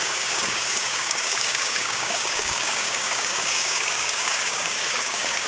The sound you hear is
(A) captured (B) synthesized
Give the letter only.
B